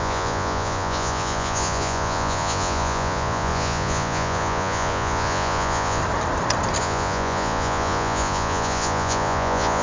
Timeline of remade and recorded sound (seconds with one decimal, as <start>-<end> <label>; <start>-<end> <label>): 0.0-6.0 remade; 6.0-6.8 recorded; 6.8-9.8 remade